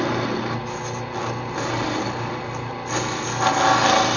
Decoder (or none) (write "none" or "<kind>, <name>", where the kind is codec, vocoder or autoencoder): none